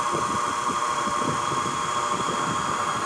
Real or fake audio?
fake